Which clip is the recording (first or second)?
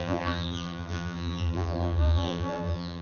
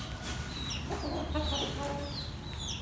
second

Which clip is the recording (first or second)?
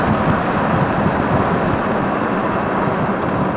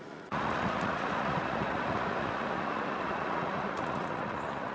first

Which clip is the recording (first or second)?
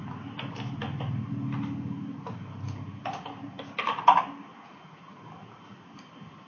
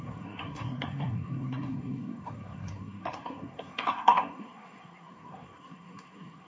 first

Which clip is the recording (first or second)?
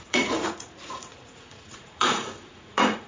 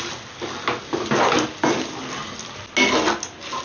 second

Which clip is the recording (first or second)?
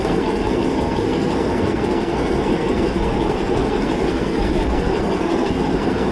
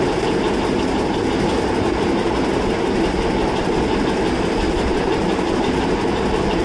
second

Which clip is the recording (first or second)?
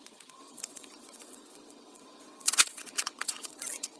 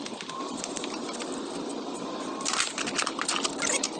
second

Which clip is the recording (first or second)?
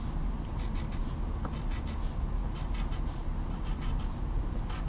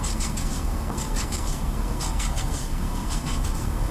first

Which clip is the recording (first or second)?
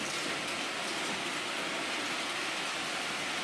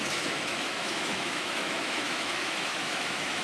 first